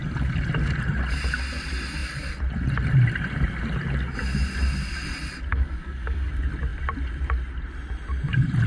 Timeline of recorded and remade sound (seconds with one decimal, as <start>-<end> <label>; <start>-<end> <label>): 0.0-5.5 recorded; 5.5-6.3 remade; 6.3-8.7 recorded